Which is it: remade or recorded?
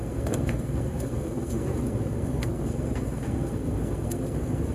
remade